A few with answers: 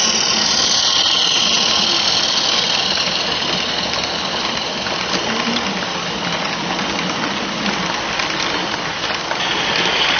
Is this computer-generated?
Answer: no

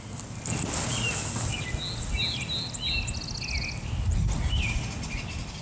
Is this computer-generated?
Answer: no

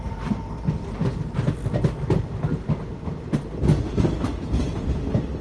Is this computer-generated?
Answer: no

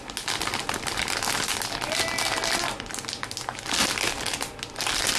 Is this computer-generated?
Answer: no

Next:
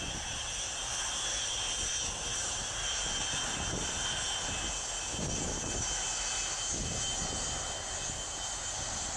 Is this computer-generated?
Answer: no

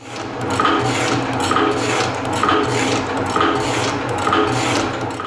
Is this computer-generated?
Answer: no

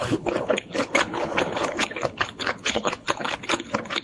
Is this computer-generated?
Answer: yes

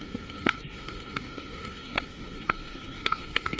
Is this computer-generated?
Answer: yes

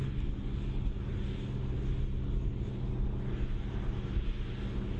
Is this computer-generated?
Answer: no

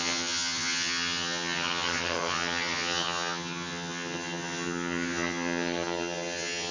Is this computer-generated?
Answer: yes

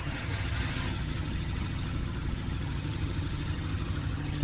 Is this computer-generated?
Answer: yes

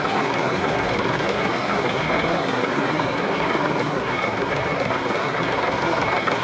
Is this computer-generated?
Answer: yes